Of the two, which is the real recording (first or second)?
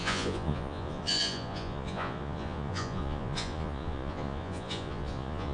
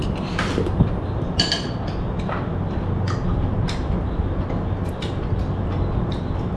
second